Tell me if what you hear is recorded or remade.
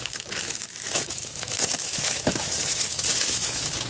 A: remade